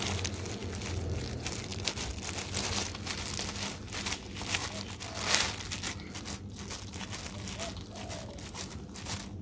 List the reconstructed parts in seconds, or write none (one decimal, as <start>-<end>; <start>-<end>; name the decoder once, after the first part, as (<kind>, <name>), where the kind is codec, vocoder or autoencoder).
none